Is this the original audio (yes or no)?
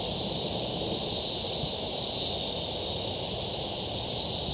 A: yes